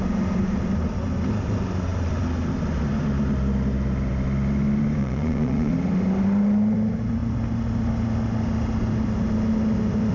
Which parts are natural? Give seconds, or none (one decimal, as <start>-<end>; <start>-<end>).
0.0-5.0; 5.7-10.1